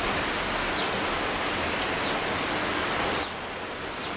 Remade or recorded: recorded